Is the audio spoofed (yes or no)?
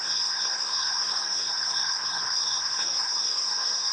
yes